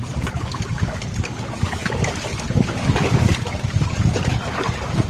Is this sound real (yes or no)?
no